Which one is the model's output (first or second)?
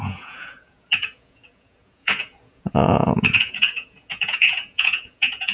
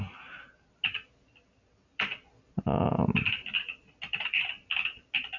first